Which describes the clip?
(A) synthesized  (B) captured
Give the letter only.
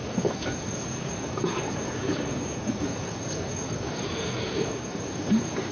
A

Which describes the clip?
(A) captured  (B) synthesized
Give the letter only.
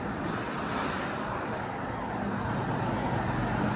A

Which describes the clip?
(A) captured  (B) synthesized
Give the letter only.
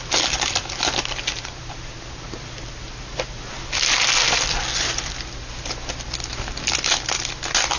A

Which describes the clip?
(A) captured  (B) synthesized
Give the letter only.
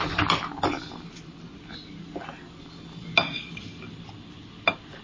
A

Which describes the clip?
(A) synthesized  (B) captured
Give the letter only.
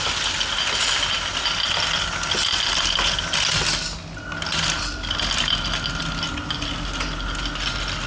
B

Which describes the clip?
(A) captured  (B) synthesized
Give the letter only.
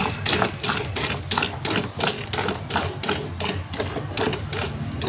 A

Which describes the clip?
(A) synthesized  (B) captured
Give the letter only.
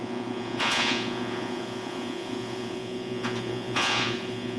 A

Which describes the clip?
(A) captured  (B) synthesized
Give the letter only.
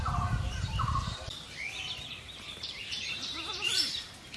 B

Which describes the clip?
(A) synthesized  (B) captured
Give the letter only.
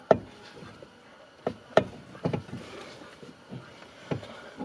A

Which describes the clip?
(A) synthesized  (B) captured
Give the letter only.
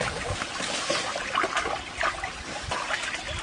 B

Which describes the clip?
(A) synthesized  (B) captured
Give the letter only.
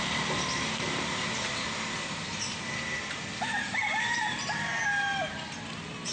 B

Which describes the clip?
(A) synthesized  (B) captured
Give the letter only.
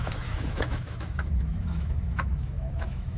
A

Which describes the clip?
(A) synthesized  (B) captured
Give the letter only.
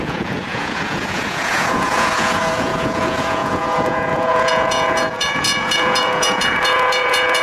A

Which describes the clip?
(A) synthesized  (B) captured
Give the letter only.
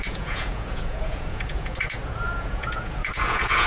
A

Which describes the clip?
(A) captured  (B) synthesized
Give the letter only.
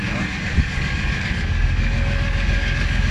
B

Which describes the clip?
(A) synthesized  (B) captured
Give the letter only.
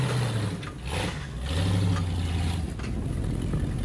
B